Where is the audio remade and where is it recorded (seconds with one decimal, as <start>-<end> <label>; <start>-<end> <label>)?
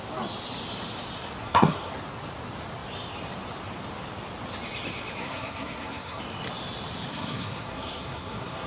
0.0-1.4 recorded; 1.4-1.9 remade; 1.9-5.2 recorded; 5.2-6.2 remade; 6.2-7.1 recorded; 7.1-8.7 remade